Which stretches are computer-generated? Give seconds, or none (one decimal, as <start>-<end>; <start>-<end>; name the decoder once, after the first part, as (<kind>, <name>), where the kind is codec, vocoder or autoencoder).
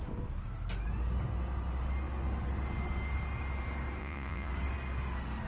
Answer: 4.0-4.5 (vocoder, Vocos)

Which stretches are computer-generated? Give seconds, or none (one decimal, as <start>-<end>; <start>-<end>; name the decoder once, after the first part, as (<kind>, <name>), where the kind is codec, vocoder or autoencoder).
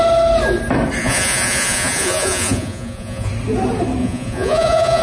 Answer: 1.0-3.3 (vocoder, Vocos); 4.0-5.0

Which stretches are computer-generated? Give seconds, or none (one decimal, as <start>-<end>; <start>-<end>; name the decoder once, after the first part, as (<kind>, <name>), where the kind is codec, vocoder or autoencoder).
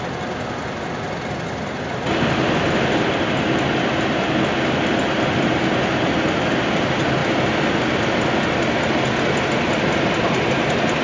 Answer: none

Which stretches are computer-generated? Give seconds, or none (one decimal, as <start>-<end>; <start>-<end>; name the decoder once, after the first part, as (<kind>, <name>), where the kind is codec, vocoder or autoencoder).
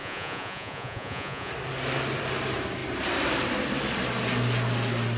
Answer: 0.0-1.5 (vocoder, Vocos)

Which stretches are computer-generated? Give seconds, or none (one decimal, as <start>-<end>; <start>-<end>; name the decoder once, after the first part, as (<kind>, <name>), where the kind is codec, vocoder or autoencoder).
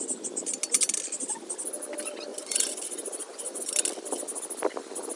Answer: 2.3-3.6 (vocoder, Vocos)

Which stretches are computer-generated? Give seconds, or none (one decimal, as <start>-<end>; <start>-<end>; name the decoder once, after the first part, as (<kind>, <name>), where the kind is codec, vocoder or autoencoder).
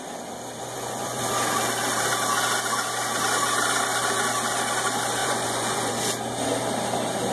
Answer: 0.6-1.2 (vocoder, Vocos); 5.2-5.9